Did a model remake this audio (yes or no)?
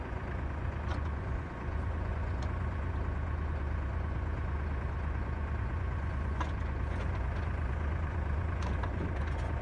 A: yes